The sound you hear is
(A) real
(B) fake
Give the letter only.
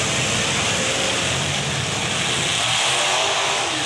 A